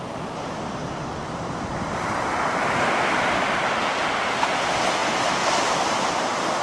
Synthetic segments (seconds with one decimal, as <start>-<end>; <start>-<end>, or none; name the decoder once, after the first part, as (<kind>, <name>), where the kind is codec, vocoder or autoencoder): none